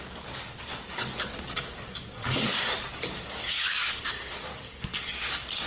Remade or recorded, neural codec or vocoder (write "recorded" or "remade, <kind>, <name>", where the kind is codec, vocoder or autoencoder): remade, codec, DAC